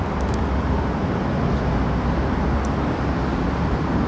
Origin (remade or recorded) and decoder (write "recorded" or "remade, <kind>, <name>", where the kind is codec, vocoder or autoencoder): recorded